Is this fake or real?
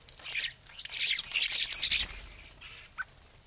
real